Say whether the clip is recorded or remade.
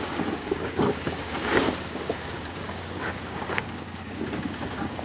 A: remade